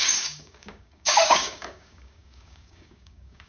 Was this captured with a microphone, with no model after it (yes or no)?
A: no